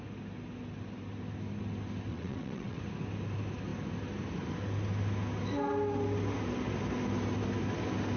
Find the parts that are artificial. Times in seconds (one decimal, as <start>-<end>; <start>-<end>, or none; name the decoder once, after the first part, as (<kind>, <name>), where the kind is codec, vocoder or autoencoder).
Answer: 2.1-2.8 (vocoder, WaveNeXt)